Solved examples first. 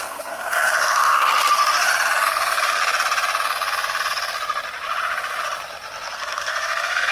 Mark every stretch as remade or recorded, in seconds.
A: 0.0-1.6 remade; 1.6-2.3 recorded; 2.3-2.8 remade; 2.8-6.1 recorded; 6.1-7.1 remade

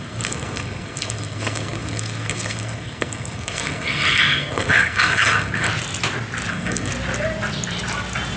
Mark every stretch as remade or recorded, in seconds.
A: 0.0-5.7 remade; 5.7-6.5 recorded; 6.5-6.9 remade; 6.9-8.4 recorded

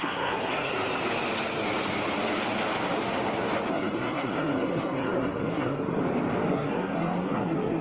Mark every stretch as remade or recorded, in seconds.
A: 0.0-0.7 remade; 0.7-3.7 recorded; 3.7-6.0 remade; 6.0-6.5 recorded; 6.5-7.8 remade

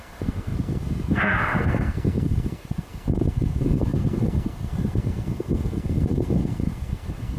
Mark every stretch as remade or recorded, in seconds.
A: 0.0-7.4 remade